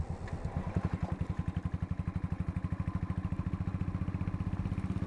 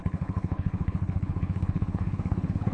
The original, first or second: first